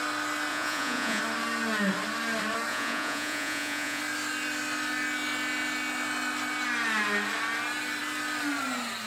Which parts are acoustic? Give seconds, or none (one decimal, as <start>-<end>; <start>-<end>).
0.0-0.5; 1.2-2.7; 4.0-9.1